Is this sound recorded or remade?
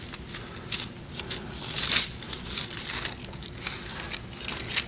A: recorded